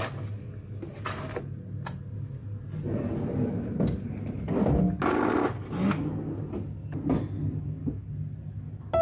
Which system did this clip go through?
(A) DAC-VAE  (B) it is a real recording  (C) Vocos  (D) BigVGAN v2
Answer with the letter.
B